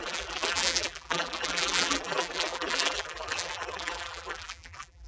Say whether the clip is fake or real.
fake